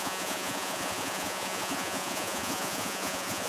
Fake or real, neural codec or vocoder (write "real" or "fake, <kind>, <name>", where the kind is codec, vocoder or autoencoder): fake, vocoder, Vocos